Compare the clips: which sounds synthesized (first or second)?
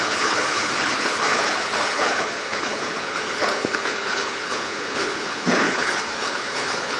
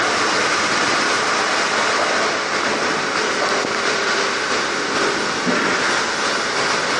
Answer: first